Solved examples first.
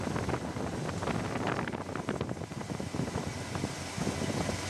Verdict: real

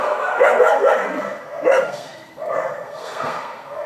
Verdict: fake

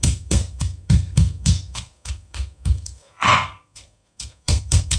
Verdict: fake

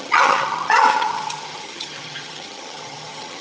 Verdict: fake